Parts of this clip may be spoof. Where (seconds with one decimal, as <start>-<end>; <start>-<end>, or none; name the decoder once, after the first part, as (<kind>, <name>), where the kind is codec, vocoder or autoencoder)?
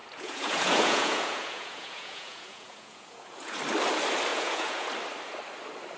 0.0-3.6 (vocoder, Vocos); 4.3-4.9